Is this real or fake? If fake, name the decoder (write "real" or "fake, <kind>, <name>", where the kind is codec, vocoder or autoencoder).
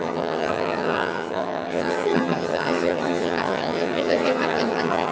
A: fake, vocoder, HiFi-GAN